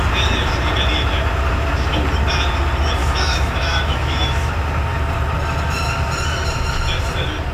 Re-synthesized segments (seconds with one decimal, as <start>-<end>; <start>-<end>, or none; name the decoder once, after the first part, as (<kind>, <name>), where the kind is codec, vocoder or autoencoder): 3.0-4.5 (autoencoder, DAC-VAE)